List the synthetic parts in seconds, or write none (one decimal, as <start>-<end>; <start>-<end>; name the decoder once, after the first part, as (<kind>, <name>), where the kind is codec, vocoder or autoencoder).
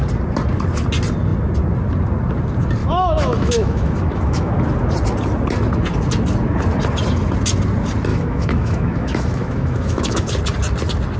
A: 2.8-4.5 (autoencoder, DAC-VAE); 8.1-10.3